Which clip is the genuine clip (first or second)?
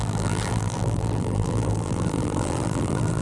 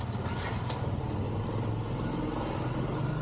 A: second